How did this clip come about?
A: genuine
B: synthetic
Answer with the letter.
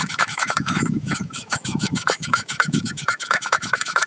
B